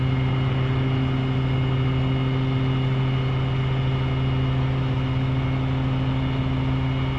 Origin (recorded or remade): recorded